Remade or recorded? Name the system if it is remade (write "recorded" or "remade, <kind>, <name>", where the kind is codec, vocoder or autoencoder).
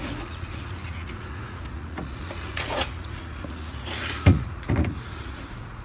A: remade, vocoder, Vocos